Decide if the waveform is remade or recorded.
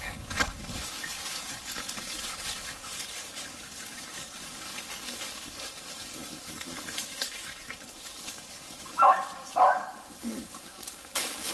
remade